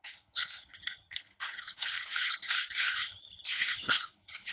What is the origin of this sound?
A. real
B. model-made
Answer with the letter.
B